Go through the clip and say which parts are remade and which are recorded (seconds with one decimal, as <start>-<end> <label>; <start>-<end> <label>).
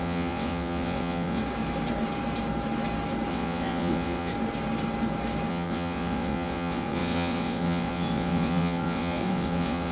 0.0-1.4 remade; 1.4-3.3 recorded; 3.3-4.3 remade; 4.3-5.5 recorded; 5.5-9.9 remade